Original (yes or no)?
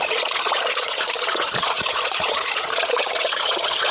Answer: no